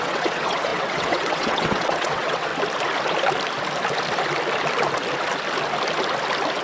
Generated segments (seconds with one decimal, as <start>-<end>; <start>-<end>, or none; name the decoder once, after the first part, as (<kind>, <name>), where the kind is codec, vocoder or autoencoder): 0.0-2.5 (vocoder, WaveNeXt)